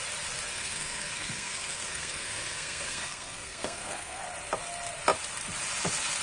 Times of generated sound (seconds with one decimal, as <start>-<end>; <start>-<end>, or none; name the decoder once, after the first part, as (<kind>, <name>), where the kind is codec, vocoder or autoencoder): 0.5-4.2 (codec, SNAC)